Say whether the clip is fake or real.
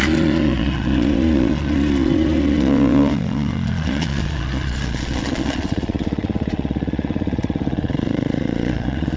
fake